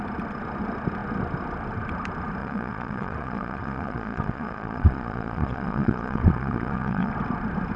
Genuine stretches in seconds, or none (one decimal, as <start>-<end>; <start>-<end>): 0.0-2.4; 7.1-7.8